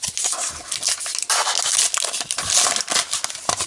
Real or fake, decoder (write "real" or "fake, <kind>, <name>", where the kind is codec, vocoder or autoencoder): real